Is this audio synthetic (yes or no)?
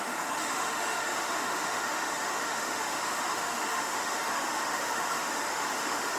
yes